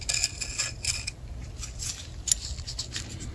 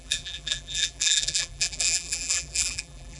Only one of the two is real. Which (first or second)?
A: first